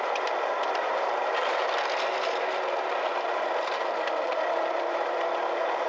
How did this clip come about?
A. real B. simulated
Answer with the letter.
B